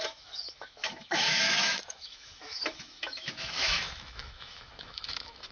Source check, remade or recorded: remade